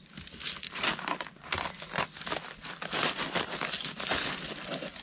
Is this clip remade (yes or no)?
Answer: no